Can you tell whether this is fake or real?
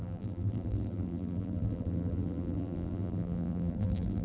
fake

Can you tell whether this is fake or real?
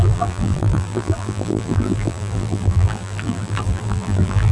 fake